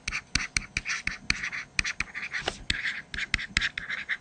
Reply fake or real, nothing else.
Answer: real